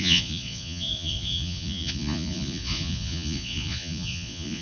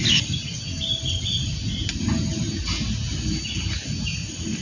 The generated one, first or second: first